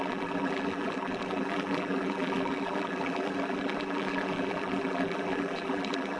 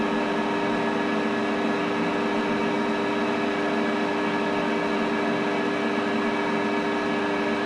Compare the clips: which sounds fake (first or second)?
first